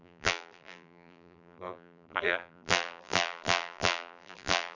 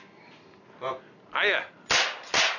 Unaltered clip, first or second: second